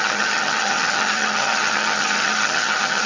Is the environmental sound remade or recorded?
remade